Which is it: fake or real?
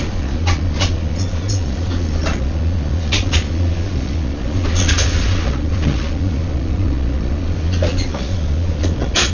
fake